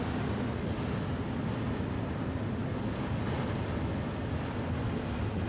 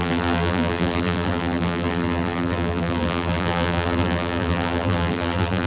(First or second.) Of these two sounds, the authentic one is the first